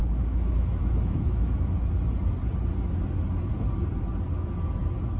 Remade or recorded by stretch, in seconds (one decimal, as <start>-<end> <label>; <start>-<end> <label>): 0.0-1.9 remade; 1.9-5.2 recorded